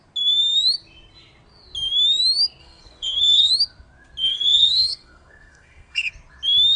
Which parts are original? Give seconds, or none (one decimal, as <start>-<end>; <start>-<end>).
0.0-2.6; 3.5-4.2; 6.1-6.8